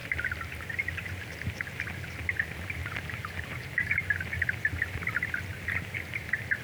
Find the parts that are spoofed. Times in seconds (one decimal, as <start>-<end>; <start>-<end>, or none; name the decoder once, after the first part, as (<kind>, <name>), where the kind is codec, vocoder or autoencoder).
0.0-0.9 (vocoder, BigVGAN v2); 2.8-3.7; 5.5-6.6